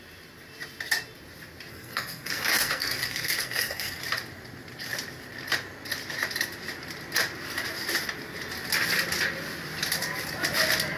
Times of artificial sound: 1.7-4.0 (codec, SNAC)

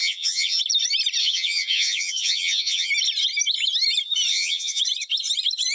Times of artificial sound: 0.0-0.6 (vocoder, HiFi-GAN); 1.2-2.9; 4.3-4.8

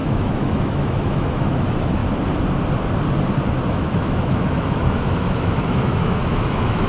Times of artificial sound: 0.0-2.0 (autoencoder, DAC-VAE); 3.7-6.9

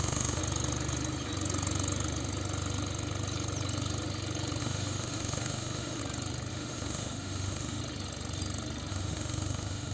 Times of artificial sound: 0.0-0.4 (autoencoder, DAC-VAE); 4.6-6.0; 6.5-7.8; 8.9-9.9

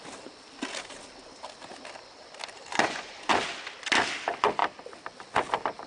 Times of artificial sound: 2.7-3.3 (vocoder, Vocos)

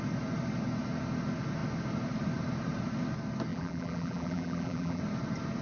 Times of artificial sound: 3.5-5.0 (vocoder, BigVGAN v2)

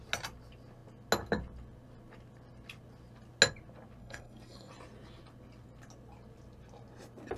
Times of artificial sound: 4.0-4.7 (codec, SNAC)

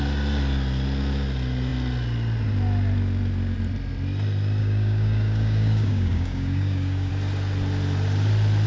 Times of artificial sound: 4.6-7.1 (codec, DAC)